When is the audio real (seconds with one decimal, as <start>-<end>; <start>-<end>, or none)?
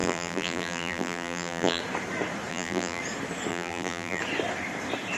1.8-2.5; 3.0-3.5; 4.2-5.2